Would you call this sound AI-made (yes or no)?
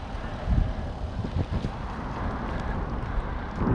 no